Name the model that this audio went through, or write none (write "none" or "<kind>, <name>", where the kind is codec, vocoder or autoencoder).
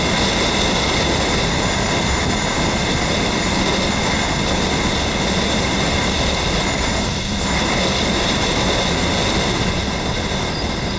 none